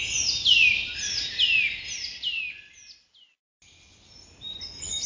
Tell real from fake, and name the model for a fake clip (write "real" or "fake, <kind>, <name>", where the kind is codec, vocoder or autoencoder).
real